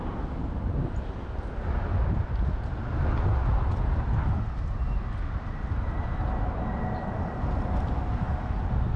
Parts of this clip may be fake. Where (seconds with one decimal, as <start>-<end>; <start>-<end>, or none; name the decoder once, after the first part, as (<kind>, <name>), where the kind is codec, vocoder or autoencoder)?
none